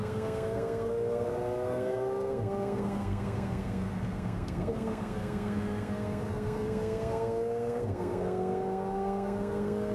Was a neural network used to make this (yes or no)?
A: yes